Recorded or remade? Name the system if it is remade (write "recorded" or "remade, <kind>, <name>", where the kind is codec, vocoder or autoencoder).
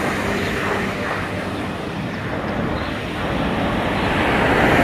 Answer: recorded